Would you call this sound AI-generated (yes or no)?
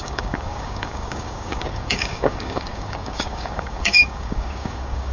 yes